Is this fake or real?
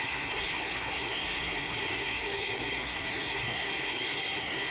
fake